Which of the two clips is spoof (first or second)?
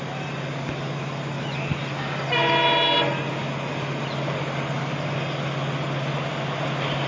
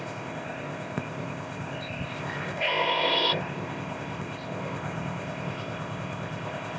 second